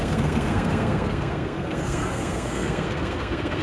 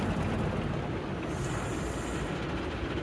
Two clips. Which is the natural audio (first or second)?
second